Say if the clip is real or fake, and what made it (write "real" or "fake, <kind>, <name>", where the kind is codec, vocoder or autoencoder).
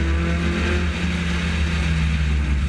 real